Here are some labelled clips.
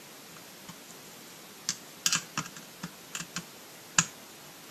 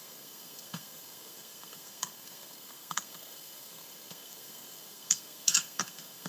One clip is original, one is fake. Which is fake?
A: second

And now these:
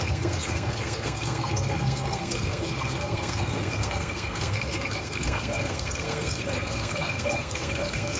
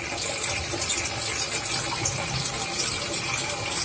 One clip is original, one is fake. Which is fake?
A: first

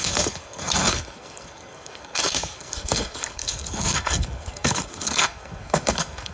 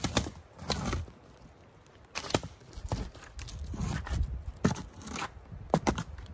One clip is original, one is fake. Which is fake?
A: first